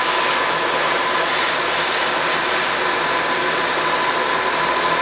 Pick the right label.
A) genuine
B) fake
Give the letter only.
A